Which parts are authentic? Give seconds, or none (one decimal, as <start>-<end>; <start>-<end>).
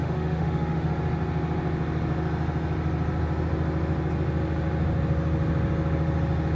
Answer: 0.9-6.5